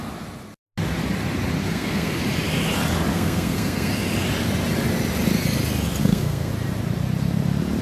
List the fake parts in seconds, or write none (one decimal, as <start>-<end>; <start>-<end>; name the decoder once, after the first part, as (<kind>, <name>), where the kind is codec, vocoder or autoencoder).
1.6-2.2 (codec, SNAC); 3.1-3.9; 6.0-6.5